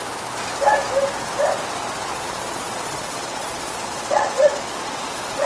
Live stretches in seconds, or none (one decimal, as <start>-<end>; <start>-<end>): 0.0-2.1